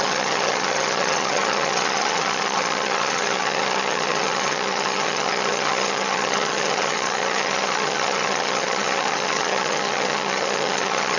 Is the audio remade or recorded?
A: remade